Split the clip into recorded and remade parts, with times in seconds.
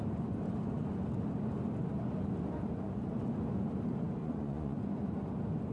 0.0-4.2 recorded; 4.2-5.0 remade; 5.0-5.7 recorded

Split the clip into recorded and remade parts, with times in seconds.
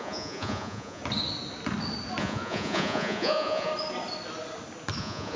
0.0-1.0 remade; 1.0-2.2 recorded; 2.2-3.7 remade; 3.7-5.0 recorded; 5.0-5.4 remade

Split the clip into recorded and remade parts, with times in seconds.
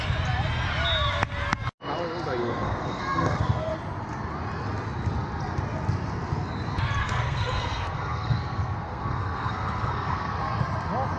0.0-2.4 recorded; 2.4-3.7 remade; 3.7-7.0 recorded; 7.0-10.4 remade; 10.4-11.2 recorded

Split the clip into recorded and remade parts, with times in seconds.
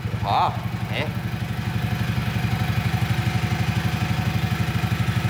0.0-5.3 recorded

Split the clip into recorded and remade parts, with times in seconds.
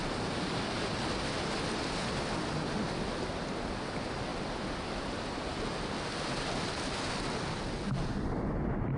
0.0-9.0 recorded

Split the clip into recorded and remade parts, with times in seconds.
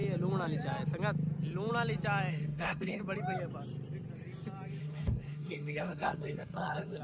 0.0-2.3 recorded; 2.3-3.0 remade; 3.0-4.8 recorded; 4.8-7.0 remade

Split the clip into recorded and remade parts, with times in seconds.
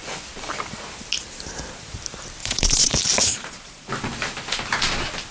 0.0-2.4 recorded; 2.4-2.9 remade; 2.9-3.3 recorded; 3.3-3.9 remade; 3.9-5.3 recorded